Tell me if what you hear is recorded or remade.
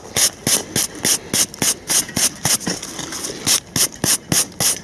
recorded